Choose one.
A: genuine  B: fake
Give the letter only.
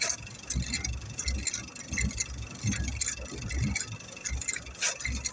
A